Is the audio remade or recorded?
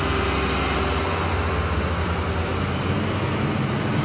recorded